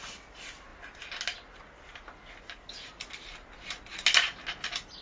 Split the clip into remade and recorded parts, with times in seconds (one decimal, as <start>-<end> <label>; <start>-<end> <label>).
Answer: 0.0-5.0 recorded